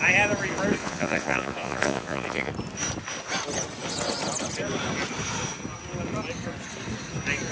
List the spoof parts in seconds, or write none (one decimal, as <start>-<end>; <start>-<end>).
0.8-2.5

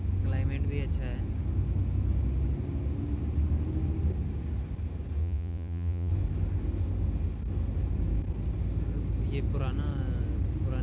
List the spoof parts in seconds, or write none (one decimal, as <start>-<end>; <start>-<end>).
5.2-6.1

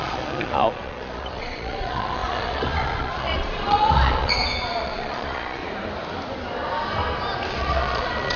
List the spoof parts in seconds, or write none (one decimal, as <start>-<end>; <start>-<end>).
0.0-5.6; 7.5-8.4

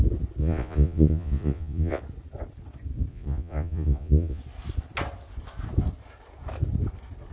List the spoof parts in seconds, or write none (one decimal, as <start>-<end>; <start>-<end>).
0.4-2.0; 3.1-4.4

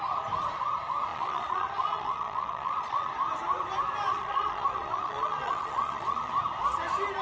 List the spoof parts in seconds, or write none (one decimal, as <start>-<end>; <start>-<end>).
1.1-3.1; 4.1-6.3